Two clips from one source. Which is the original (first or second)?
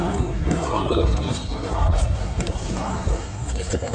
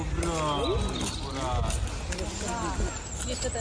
second